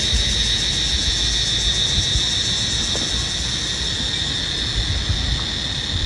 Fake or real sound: real